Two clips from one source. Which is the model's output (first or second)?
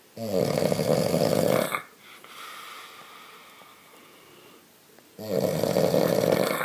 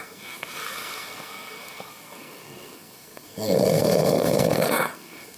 second